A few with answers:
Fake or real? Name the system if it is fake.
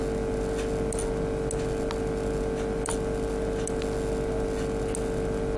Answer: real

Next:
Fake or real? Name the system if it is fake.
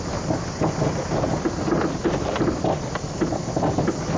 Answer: real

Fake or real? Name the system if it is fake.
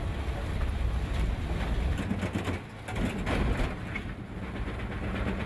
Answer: real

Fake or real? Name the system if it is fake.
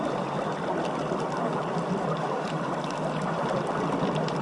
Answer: real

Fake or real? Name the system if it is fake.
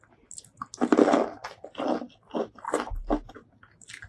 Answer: real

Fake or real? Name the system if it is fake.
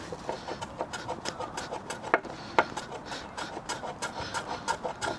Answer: real